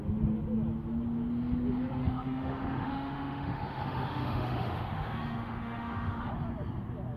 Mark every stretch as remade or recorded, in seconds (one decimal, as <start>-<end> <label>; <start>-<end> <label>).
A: 0.0-2.0 recorded; 2.0-6.3 remade; 6.3-7.2 recorded